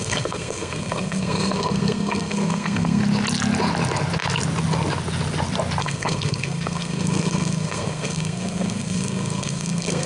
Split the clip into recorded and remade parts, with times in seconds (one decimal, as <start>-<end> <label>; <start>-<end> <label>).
0.0-3.0 remade; 3.0-5.8 recorded; 5.8-10.1 remade